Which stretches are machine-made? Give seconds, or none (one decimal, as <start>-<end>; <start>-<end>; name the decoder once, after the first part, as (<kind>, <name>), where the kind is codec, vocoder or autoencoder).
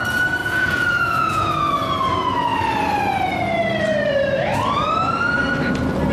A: 0.4-1.5 (vocoder, Vocos)